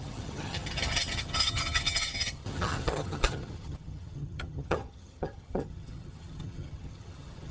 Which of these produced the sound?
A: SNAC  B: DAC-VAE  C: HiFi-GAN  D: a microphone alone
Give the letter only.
C